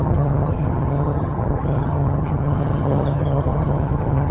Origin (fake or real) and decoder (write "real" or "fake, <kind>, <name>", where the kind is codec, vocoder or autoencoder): fake, vocoder, HiFi-GAN